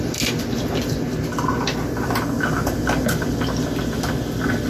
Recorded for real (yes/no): yes